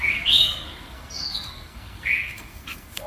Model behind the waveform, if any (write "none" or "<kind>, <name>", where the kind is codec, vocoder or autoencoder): codec, SNAC